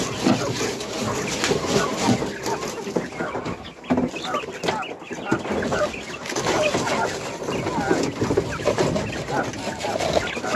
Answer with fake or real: real